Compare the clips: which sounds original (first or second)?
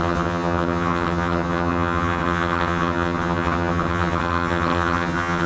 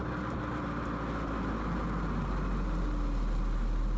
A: second